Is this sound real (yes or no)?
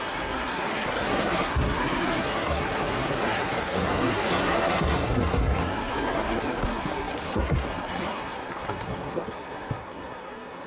no